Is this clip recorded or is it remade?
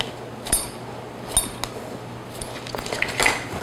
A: recorded